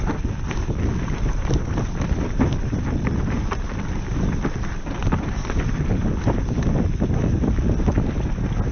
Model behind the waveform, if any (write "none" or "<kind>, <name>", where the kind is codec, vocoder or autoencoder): none